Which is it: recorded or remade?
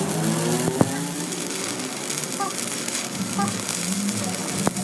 recorded